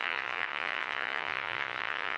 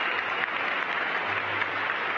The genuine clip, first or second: second